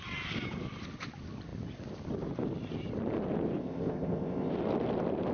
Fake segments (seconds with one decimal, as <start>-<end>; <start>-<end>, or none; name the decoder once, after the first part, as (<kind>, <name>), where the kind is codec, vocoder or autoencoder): 3.6-4.5 (codec, ZipCodec)